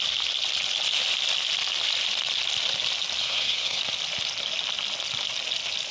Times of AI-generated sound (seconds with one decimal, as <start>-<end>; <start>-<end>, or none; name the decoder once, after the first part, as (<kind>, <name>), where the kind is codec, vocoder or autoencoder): 3.2-3.8 (codec, SNAC)